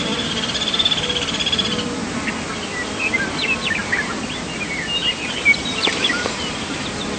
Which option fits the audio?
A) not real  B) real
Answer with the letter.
B